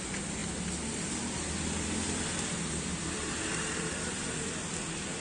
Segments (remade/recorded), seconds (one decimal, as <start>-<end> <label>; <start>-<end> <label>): 0.0-5.2 recorded